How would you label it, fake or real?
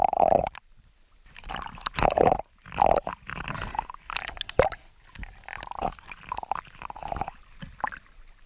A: real